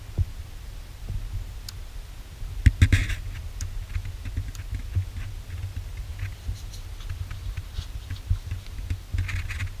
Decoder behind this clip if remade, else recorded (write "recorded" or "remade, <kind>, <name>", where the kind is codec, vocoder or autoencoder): recorded